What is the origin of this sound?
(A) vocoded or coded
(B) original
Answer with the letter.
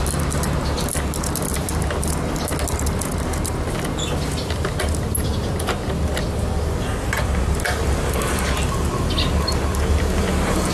B